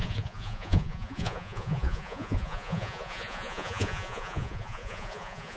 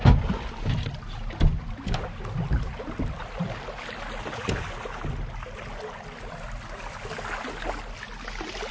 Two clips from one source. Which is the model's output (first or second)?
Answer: first